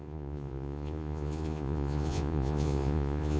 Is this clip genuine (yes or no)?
no